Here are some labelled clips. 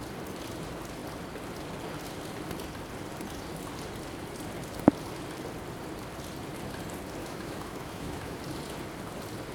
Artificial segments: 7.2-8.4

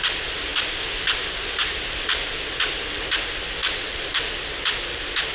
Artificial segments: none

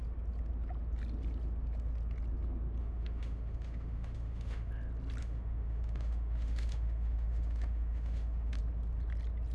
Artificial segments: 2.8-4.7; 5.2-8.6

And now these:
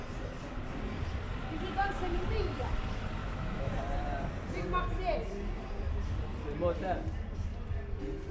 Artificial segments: 3.2-3.8

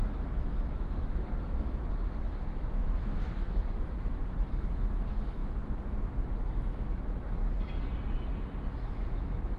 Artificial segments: 0.0-5.4; 6.4-7.4; 8.7-9.6

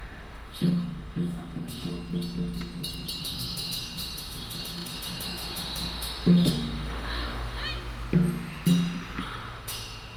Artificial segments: 0.0-1.9; 3.2-7.6; 9.2-10.2

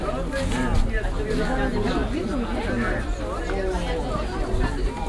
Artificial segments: none

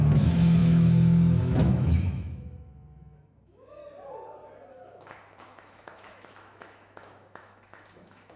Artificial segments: 0.0-3.8; 4.7-8.4